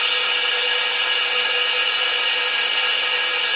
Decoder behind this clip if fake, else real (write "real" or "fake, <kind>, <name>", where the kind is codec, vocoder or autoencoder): real